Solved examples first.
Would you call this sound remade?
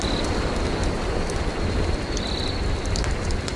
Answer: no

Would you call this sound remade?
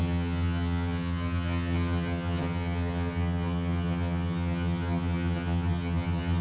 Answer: yes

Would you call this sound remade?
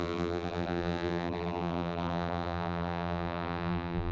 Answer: yes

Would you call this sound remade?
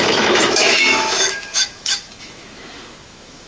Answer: yes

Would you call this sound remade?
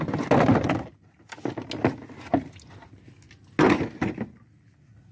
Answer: no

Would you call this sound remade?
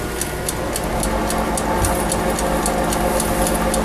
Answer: no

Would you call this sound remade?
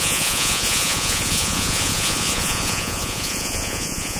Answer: yes